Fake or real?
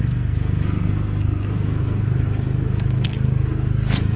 fake